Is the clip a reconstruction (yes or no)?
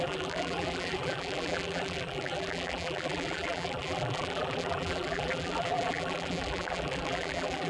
yes